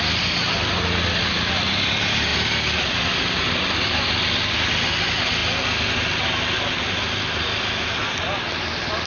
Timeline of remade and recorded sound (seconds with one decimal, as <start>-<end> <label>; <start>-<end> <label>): 0.0-9.1 recorded